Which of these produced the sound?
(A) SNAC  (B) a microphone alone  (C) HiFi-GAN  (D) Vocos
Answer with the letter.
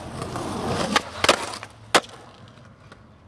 B